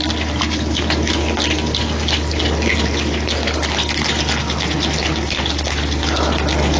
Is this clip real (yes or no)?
yes